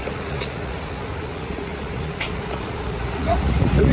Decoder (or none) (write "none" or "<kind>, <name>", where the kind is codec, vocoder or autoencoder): vocoder, Vocos